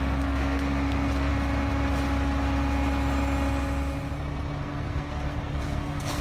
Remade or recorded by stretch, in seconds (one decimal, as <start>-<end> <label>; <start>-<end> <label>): 0.0-1.3 remade; 1.3-4.6 recorded; 4.6-6.2 remade